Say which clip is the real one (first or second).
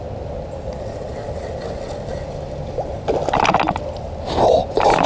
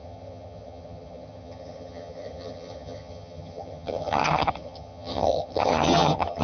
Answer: first